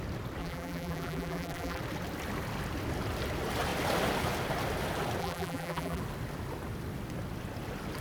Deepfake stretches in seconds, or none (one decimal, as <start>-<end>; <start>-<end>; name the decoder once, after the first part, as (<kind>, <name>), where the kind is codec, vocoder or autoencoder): 0.4-1.8 (vocoder, BigVGAN v2); 5.2-6.0